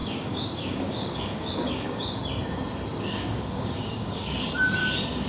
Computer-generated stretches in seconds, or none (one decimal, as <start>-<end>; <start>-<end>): 0.0-2.2; 3.0-4.8

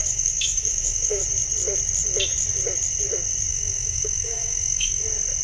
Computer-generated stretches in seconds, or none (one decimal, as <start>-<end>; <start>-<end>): 0.0-1.2; 3.5-5.0